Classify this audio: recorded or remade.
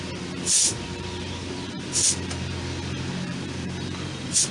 remade